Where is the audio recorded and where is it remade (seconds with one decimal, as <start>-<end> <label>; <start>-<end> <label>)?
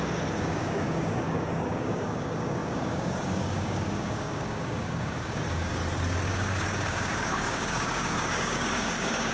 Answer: 0.0-5.8 remade; 5.8-6.3 recorded; 6.3-9.3 remade